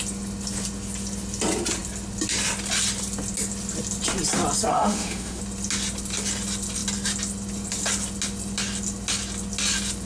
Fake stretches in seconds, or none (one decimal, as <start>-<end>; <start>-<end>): 4.7-5.4